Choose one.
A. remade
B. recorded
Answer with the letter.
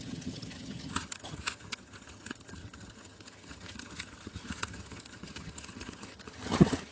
A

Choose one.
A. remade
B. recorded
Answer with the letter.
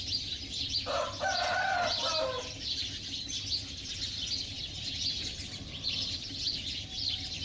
B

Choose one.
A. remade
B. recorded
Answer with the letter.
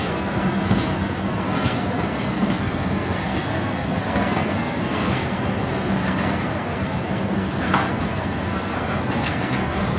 A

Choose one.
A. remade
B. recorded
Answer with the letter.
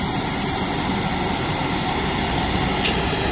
B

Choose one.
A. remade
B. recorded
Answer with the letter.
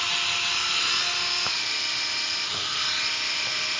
B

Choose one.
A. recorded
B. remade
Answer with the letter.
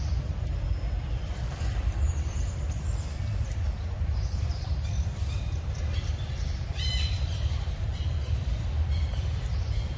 B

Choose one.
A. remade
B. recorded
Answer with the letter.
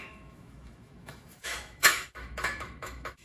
A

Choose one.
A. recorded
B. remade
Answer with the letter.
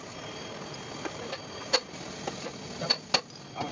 A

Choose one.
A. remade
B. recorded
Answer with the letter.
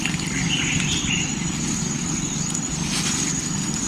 B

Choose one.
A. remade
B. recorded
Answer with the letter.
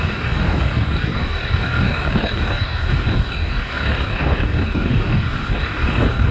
A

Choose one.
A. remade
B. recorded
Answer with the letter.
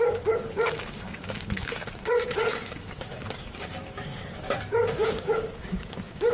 A